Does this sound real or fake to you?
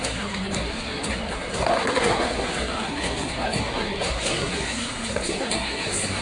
fake